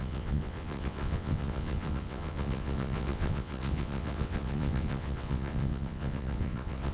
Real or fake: fake